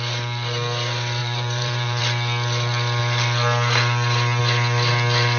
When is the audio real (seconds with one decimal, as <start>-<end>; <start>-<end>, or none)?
0.0-1.2; 2.0-5.4